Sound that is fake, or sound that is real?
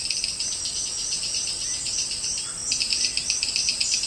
real